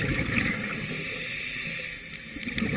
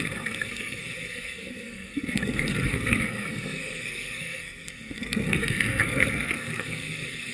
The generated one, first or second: second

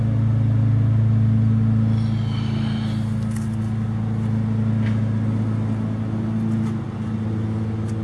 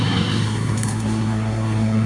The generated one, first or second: second